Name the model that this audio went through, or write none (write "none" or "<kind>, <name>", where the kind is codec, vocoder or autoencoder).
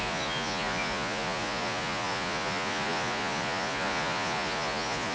vocoder, Vocos